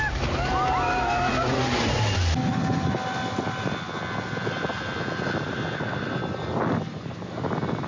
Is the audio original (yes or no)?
yes